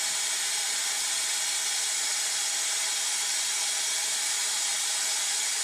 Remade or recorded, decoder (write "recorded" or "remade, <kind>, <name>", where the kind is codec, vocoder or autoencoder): recorded